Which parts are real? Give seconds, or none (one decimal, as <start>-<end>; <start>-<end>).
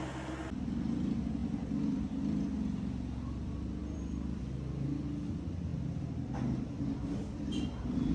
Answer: 0.0-1.4; 2.9-3.8; 4.4-5.7; 7.6-8.1